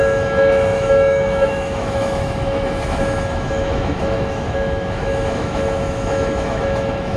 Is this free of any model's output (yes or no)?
no